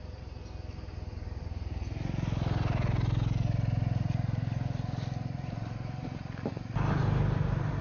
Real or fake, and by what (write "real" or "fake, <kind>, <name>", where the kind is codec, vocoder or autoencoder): real